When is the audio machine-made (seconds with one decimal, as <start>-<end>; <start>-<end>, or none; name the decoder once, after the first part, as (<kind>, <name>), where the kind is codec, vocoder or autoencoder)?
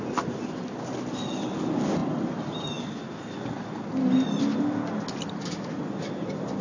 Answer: none